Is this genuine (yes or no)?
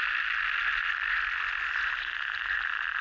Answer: yes